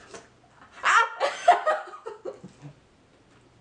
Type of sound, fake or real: real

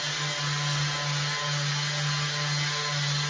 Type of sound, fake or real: real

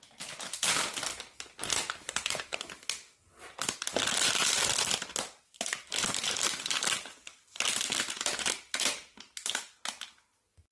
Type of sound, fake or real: real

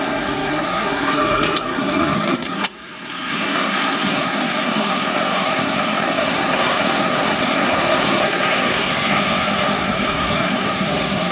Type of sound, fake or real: fake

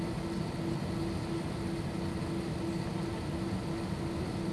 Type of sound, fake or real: real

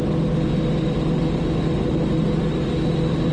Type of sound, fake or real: real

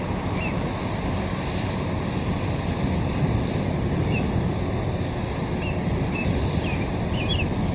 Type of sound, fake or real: real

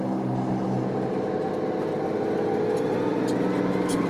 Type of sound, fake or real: real